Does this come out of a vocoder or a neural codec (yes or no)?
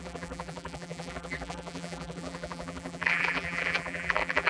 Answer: yes